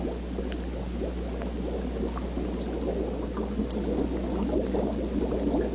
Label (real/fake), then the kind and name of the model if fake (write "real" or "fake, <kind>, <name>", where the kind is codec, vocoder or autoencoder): real